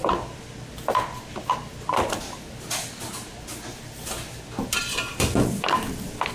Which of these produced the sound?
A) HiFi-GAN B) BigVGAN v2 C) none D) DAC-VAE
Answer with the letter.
C